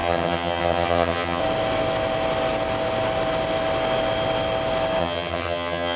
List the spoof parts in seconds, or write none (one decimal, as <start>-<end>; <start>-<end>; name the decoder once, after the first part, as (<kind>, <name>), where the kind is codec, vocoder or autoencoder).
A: 0.0-1.4 (vocoder, HiFi-GAN); 5.0-6.0